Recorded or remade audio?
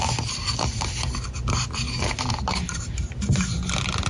recorded